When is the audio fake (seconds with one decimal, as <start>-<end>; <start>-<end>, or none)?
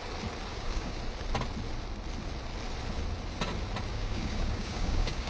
0.5-1.0; 3.9-5.3